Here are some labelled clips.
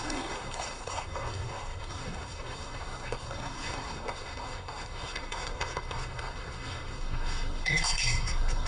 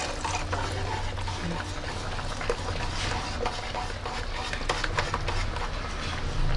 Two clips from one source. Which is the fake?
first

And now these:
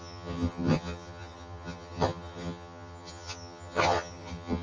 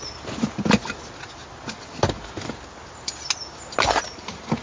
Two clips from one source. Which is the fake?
first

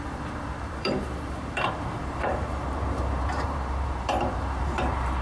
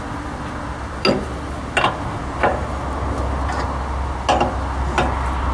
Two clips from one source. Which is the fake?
first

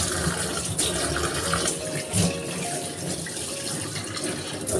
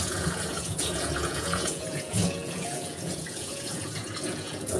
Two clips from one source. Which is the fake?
second